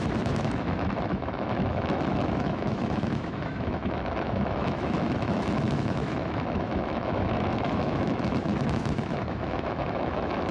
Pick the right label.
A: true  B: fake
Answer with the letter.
B